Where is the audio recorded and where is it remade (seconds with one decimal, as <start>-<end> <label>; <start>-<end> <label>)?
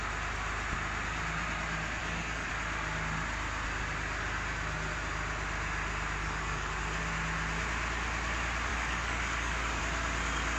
0.0-2.0 recorded; 2.0-2.5 remade; 2.5-6.2 recorded; 6.2-6.8 remade; 6.8-8.7 recorded; 8.7-9.8 remade; 9.8-10.6 recorded